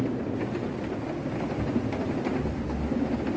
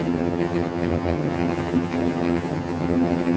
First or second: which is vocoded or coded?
second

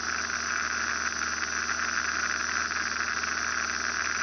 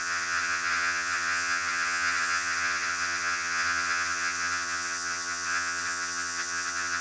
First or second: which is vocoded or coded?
second